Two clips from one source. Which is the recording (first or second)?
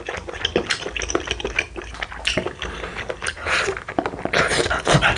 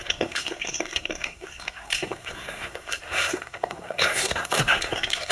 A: first